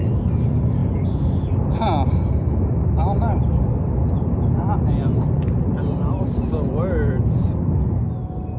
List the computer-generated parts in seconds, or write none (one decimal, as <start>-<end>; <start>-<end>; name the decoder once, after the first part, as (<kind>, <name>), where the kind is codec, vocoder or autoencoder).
0.8-1.5 (vocoder, Vocos)